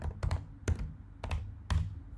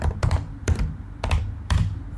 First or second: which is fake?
second